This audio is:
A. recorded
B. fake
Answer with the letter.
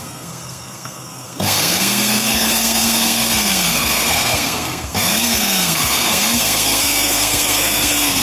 B